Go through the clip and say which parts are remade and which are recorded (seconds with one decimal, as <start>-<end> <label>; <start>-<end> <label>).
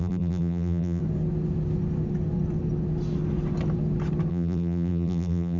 0.0-1.0 remade; 1.0-4.3 recorded; 4.3-5.6 remade